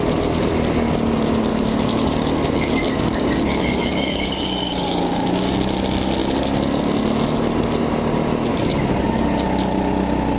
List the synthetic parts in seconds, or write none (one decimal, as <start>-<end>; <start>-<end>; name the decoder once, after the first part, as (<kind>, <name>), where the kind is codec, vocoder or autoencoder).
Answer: 1.5-5.5 (codec, DAC)

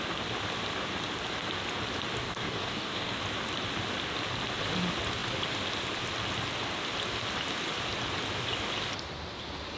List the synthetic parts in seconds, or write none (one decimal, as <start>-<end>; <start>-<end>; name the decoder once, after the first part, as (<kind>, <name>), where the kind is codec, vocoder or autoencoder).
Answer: 2.2-3.2 (codec, DAC)

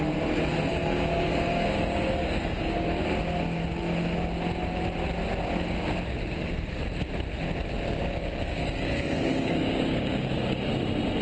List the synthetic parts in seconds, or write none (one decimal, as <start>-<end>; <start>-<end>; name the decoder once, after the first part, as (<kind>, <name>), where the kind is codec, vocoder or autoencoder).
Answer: 0.7-3.0 (codec, DAC); 6.2-6.8; 7.9-10.7

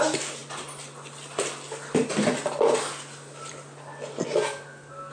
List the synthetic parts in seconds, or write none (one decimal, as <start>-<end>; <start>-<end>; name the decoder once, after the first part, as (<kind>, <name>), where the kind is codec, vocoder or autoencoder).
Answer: 4.5-5.1 (codec, DAC)

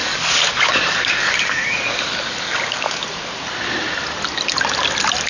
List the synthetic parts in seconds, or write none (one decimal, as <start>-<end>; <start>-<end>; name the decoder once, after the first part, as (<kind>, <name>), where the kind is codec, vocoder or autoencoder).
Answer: 0.0-3.0 (codec, DAC)

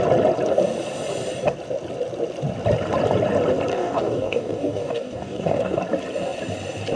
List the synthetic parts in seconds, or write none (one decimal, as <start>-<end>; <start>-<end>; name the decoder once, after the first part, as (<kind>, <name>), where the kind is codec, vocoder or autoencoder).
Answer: 3.7-5.8 (codec, DAC)